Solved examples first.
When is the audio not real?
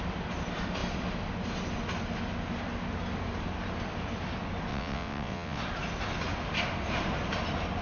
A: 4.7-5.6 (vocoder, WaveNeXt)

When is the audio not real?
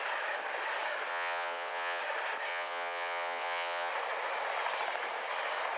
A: 1.1-2.0 (vocoder, WaveNeXt); 2.5-3.9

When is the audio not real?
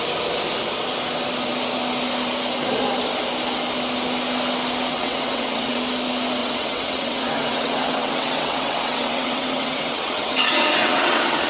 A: 4.9-5.8 (vocoder, WaveNeXt); 6.4-11.5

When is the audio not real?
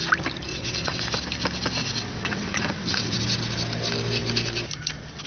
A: 0.5-1.0 (vocoder, WaveNeXt); 1.8-3.2